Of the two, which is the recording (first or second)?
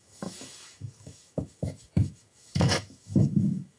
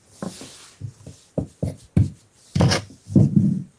second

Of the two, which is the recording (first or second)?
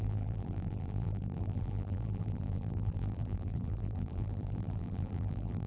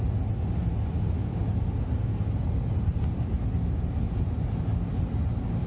second